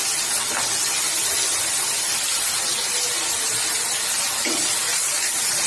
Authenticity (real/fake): real